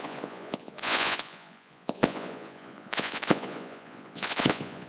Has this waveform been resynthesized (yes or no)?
yes